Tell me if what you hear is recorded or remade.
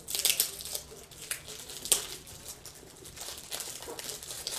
recorded